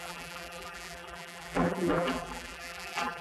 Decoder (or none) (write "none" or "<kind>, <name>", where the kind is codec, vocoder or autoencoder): vocoder, BigVGAN v2